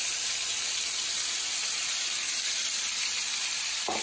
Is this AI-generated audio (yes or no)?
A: yes